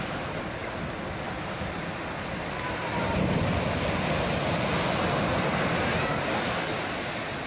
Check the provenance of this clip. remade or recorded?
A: recorded